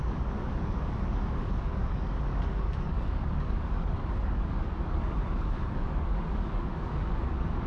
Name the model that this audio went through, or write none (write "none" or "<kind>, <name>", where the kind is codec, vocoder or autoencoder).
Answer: codec, DAC